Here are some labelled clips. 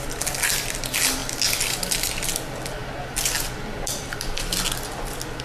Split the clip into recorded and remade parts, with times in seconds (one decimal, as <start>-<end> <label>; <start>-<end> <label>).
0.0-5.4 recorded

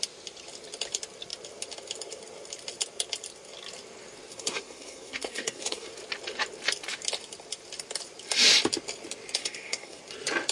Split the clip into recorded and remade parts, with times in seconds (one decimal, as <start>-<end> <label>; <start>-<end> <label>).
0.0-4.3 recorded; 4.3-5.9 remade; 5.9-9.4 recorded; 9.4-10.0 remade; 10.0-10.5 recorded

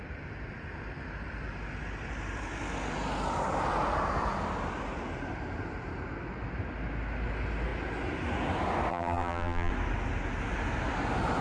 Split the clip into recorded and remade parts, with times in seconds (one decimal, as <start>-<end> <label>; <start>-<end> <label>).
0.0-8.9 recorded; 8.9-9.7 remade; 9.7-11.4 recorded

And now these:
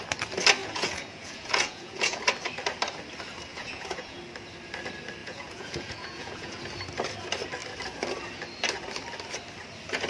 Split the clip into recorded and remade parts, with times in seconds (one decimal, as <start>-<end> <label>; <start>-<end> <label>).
0.0-0.6 recorded; 0.6-2.2 remade; 2.2-3.5 recorded; 3.5-4.2 remade; 4.2-5.2 recorded; 5.2-6.6 remade; 6.6-10.1 recorded

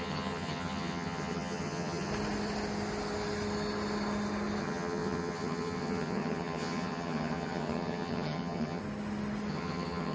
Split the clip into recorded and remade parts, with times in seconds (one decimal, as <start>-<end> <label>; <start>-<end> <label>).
0.0-2.1 remade; 2.1-4.6 recorded; 4.6-8.8 remade; 8.8-9.5 recorded; 9.5-10.1 remade

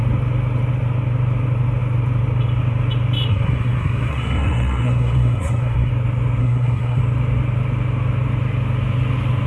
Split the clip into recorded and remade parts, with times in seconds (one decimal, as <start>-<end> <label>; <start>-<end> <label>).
0.0-3.3 recorded; 3.3-5.9 remade; 5.9-6.4 recorded; 6.4-7.0 remade; 7.0-9.5 recorded

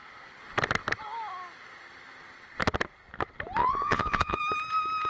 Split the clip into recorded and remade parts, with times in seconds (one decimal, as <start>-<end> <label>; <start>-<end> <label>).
0.0-3.6 recorded; 3.6-4.4 remade; 4.4-5.1 recorded

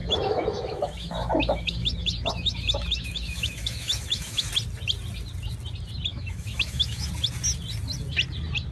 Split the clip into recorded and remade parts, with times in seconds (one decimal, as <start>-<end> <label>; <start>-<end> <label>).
0.0-4.5 remade; 4.5-6.1 recorded; 6.1-7.1 remade; 7.1-8.7 recorded